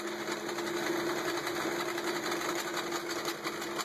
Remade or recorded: recorded